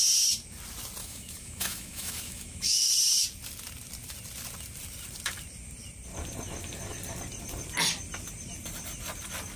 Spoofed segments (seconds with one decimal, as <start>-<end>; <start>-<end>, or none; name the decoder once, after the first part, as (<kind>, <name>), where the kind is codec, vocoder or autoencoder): 1.0-2.9 (autoencoder, DAC-VAE)